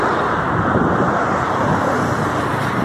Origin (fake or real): real